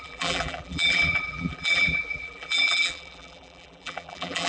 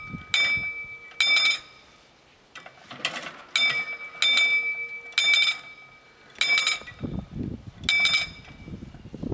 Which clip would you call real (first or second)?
second